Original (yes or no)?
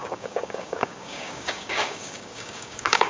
no